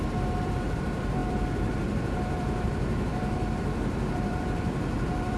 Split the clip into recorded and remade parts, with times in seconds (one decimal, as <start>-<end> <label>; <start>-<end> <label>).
0.0-5.4 remade